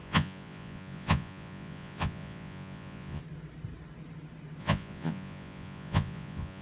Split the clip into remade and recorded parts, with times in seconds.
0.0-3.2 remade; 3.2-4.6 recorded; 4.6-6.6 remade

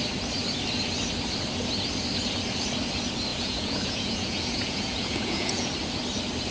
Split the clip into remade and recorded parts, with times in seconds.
0.0-3.3 recorded; 3.3-5.7 remade; 5.7-6.5 recorded

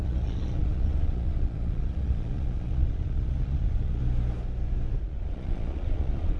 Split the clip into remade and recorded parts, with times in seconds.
0.0-4.0 remade; 4.0-5.0 recorded; 5.0-6.4 remade

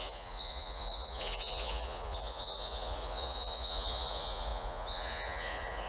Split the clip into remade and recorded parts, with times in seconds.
0.0-5.9 remade

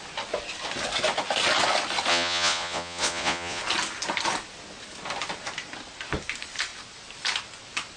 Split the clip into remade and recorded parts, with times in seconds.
0.0-2.1 recorded; 2.1-3.6 remade; 3.6-8.0 recorded

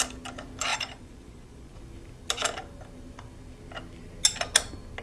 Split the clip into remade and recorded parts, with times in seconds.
0.0-0.7 recorded; 0.7-1.8 remade; 1.8-5.0 recorded

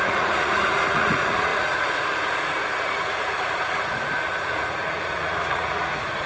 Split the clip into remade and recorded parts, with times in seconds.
0.0-6.3 remade